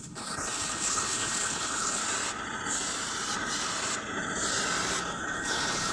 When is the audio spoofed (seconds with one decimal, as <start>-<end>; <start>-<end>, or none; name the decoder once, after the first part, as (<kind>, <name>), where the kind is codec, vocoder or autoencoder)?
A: 0.0-2.0 (codec, HILCodec); 5.0-5.9